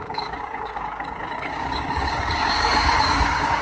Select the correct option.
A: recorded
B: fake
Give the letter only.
B